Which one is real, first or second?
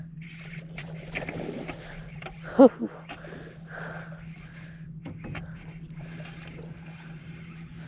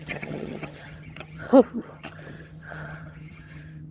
first